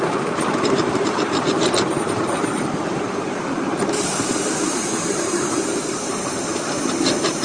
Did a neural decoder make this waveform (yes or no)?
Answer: yes